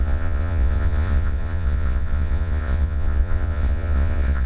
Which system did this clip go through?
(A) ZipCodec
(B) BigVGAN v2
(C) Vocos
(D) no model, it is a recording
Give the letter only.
C